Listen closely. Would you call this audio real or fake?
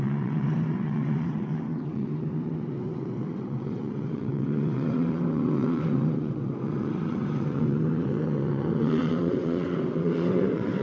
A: fake